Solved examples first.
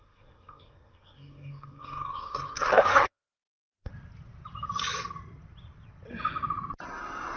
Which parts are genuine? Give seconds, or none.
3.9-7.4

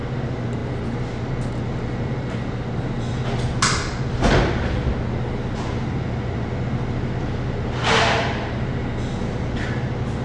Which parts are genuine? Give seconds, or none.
0.0-10.2

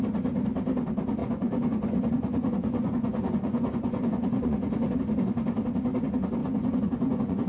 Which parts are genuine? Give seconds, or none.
0.0-1.2; 5.0-6.4

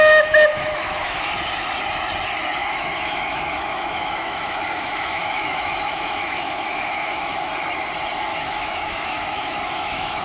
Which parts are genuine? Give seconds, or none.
0.0-0.5; 1.2-2.6; 7.5-8.3

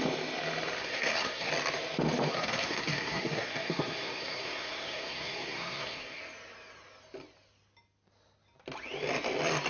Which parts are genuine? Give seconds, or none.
0.0-0.8; 1.5-2.3; 6.2-9.7

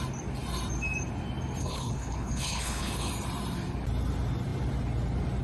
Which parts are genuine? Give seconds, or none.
0.0-1.6; 3.1-5.4

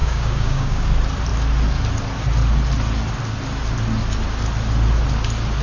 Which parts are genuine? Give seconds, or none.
0.9-5.6